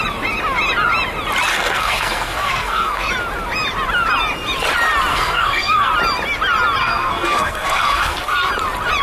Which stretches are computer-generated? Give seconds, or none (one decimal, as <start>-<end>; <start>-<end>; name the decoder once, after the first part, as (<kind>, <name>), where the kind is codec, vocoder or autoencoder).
1.5-3.1 (codec, SNAC); 5.1-5.9; 6.8-8.5